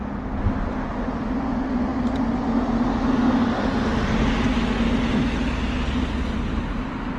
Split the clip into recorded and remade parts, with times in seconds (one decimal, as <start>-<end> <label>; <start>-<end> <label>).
0.0-7.2 recorded